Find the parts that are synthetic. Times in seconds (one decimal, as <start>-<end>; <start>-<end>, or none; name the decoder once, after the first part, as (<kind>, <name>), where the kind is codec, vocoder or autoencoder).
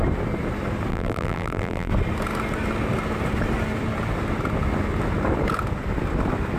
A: 0.9-1.9 (vocoder, BigVGAN v2)